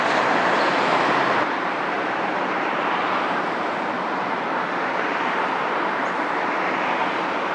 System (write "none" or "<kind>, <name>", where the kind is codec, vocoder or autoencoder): vocoder, BigVGAN v2